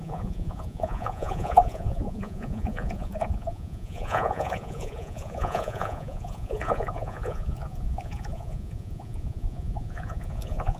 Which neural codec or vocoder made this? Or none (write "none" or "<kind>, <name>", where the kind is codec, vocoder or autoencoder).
vocoder, Vocos